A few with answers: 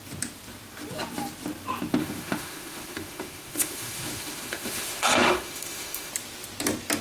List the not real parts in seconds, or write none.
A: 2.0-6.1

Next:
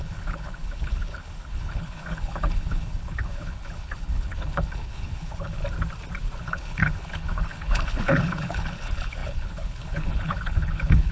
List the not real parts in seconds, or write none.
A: 0.0-5.6; 6.4-11.1

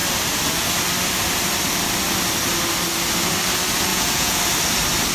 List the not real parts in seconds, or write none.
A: 3.9-4.4

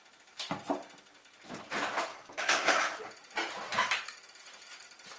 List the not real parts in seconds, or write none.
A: 2.1-2.8

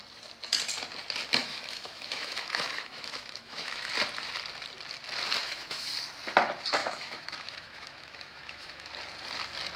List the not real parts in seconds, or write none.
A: 1.4-3.9; 5.4-5.9; 6.8-8.9

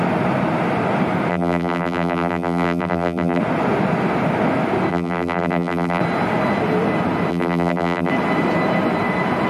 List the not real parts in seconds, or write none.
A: 1.3-3.4; 4.9-6.0; 7.3-8.1